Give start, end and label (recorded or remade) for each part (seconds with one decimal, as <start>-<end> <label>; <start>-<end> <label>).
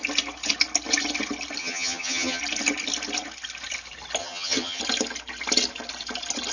0.0-1.6 recorded; 1.6-2.4 remade; 2.4-4.2 recorded; 4.2-4.8 remade; 4.8-6.5 recorded